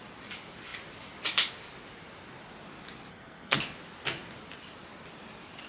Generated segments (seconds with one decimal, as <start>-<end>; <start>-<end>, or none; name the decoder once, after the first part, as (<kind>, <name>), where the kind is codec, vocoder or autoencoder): 3.1-3.6 (codec, SNAC)